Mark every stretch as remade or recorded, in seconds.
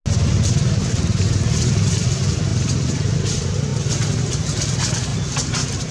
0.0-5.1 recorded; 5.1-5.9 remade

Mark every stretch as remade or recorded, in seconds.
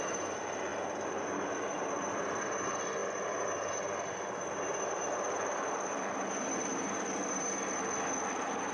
0.0-3.0 recorded; 3.0-3.7 remade; 3.7-6.7 recorded; 6.7-7.7 remade; 7.7-8.7 recorded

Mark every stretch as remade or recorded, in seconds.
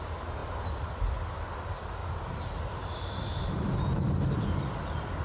0.0-2.0 recorded; 2.0-3.7 remade; 3.7-5.2 recorded